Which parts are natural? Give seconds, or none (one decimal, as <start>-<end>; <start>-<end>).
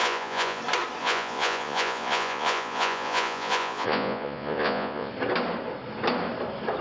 0.6-1.0; 5.1-6.8